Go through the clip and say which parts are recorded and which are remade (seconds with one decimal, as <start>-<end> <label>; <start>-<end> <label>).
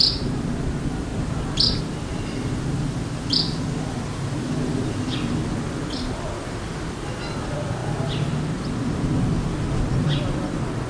0.0-10.9 recorded